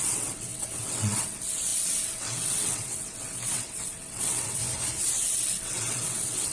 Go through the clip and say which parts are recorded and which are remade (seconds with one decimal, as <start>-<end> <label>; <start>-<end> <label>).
0.0-4.6 remade; 4.6-5.1 recorded; 5.1-6.5 remade